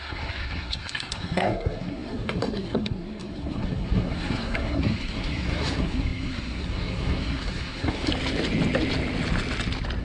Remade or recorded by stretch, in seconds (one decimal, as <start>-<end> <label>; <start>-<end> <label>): 0.0-8.1 remade; 8.1-10.0 recorded